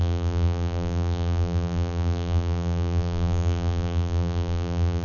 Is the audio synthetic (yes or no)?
yes